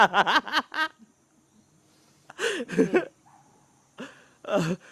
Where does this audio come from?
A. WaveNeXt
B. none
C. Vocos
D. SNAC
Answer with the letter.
B